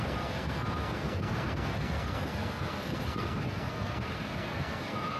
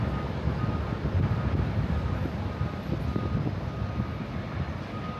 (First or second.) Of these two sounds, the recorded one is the second